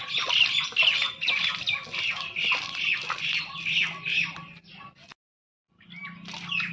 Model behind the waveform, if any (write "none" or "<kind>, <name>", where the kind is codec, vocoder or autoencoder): none